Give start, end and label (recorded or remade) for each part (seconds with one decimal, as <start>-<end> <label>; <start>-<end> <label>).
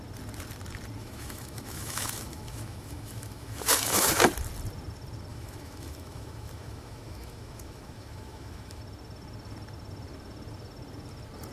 0.0-1.0 recorded; 1.0-4.2 remade; 4.2-5.3 recorded; 5.3-8.8 remade; 8.8-11.5 recorded